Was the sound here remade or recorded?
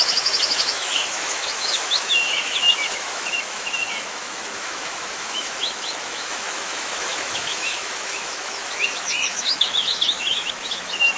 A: remade